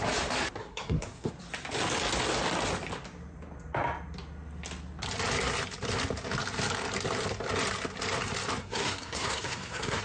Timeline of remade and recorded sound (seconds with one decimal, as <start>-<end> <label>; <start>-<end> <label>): 0.0-0.6 recorded; 0.6-1.3 remade; 1.3-8.6 recorded; 8.6-10.0 remade